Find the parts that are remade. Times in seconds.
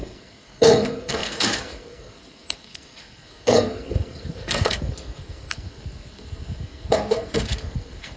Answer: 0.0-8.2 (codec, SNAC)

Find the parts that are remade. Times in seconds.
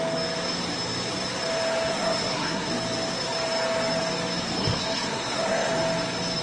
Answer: 1.9-2.7 (codec, SNAC); 4.6-5.7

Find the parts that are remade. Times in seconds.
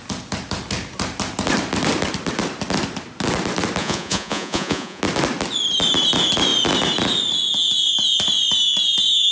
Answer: 3.8-5.0 (vocoder, Vocos)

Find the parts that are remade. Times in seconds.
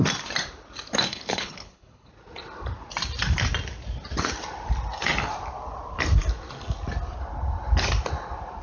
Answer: 1.1-2.1 (codec, HILCodec)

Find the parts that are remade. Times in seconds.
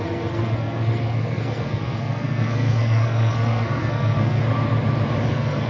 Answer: 0.0-4.4 (codec, SNAC); 5.3-5.7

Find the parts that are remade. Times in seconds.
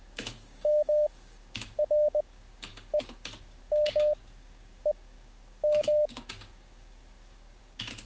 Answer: 0.0-8.1 (codec, DAC)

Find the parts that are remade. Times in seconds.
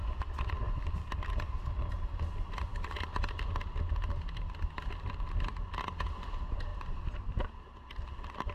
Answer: 6.7-7.5 (vocoder, BigVGAN v2)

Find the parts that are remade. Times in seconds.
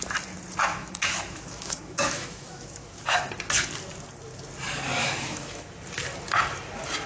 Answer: 0.7-3.3 (autoencoder, DAC-VAE); 5.0-5.7